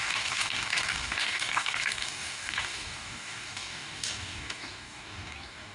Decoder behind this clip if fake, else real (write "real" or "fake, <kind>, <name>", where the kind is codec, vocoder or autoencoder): fake, codec, DAC